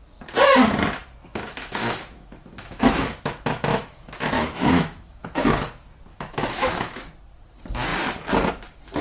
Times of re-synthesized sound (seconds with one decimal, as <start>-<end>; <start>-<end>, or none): 1.2-5.6; 6.1-7.0